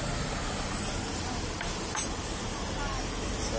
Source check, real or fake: real